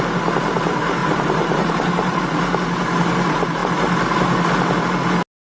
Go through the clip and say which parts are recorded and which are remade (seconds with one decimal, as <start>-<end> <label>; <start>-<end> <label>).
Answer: 0.0-1.0 recorded; 1.0-2.2 remade; 2.2-5.5 recorded